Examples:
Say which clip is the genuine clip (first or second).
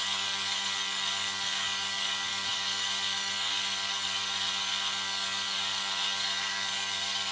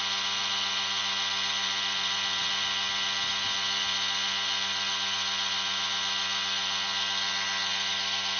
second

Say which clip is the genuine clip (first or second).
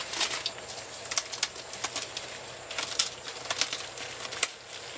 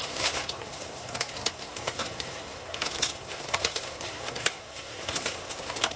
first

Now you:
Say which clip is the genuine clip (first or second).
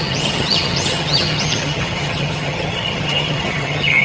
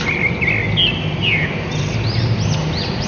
second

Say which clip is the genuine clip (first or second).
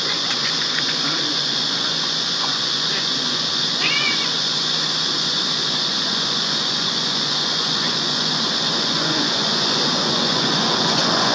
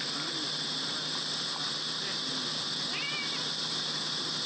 second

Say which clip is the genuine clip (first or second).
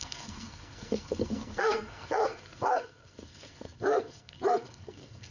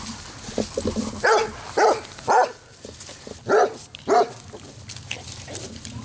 second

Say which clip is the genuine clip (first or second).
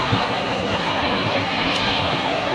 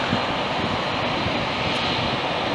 second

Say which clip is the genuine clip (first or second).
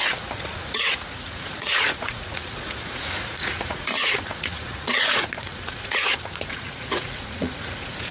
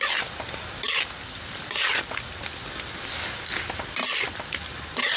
second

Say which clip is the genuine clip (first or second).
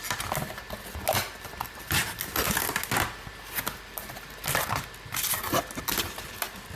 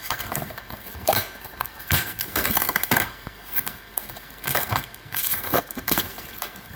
first